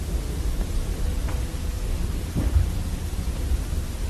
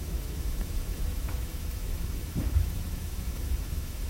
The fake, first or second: second